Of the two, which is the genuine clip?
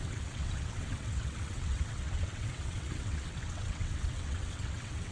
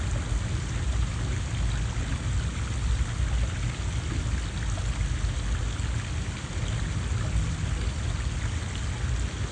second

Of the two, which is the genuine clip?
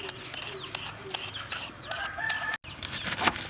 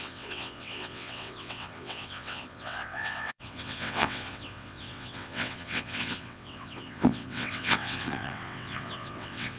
first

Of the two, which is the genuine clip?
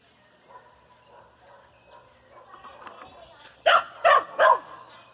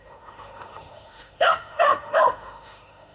first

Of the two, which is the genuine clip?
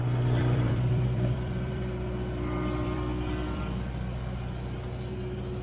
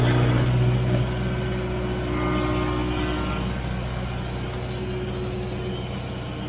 second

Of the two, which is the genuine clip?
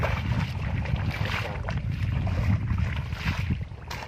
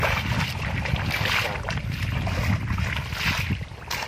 second